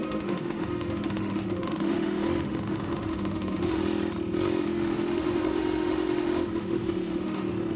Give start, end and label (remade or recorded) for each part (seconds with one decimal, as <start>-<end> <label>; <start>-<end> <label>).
0.0-3.8 remade; 3.8-4.6 recorded; 4.6-7.8 remade